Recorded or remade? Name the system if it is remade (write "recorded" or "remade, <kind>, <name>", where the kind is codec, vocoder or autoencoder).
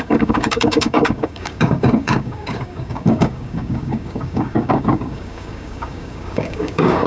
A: remade, codec, DAC